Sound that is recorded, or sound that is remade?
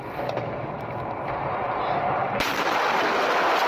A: recorded